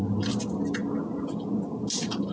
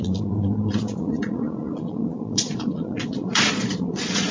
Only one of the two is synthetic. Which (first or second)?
second